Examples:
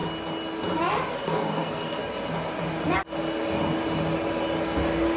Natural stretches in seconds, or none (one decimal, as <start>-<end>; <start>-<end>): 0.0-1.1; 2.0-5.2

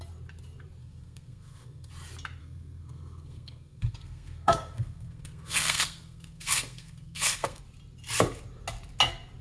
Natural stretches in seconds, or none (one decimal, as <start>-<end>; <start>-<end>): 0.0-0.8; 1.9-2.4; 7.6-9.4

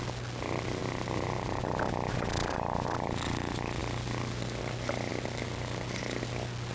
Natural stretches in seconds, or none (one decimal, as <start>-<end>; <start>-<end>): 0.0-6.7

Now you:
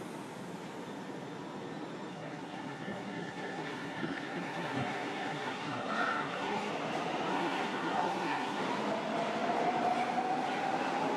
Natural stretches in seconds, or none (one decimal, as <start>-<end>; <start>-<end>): 0.0-2.1; 6.7-7.3; 8.6-11.2

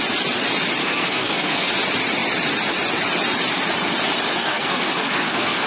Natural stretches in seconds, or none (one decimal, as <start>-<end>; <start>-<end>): 0.0-0.8; 1.7-4.4

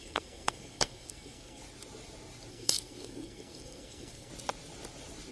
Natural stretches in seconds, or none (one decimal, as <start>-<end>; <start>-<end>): 1.6-2.5; 4.3-5.3

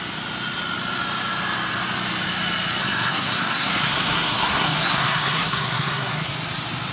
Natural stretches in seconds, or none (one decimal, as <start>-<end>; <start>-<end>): 0.0-2.8; 6.3-6.9